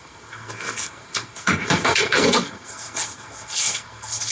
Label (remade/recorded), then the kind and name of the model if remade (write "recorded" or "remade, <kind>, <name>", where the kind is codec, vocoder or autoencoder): remade, codec, SNAC